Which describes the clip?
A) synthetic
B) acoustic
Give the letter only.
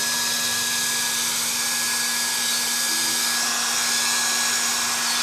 B